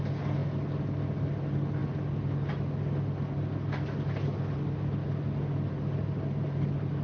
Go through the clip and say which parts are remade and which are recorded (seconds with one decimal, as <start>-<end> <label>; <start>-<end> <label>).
0.0-7.0 recorded